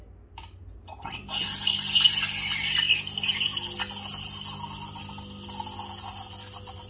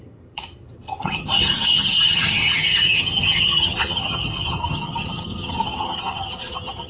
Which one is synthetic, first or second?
second